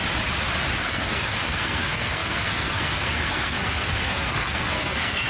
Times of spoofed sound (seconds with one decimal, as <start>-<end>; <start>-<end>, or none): 0.8-5.3

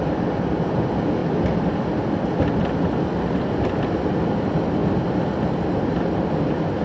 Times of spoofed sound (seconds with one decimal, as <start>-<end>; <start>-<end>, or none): none

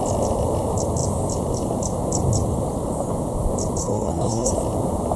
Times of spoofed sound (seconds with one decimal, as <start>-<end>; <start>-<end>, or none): 3.8-4.5

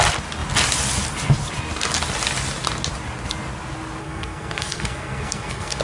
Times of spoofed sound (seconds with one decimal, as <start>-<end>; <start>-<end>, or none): 4.0-5.8

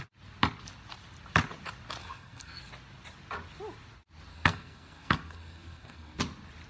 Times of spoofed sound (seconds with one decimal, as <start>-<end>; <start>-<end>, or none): 2.0-2.7; 4.3-6.2